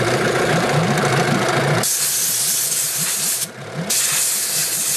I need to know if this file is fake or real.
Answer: real